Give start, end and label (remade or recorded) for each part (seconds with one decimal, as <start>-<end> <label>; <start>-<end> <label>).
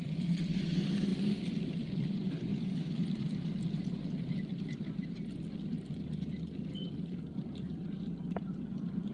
0.0-1.1 remade; 1.1-2.1 recorded; 2.1-9.1 remade